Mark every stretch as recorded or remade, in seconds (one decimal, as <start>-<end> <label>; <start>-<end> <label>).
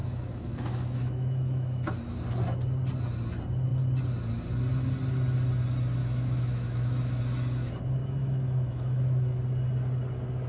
0.0-1.9 remade; 1.9-6.0 recorded; 6.0-7.2 remade; 7.2-8.0 recorded; 8.0-9.4 remade; 9.4-10.5 recorded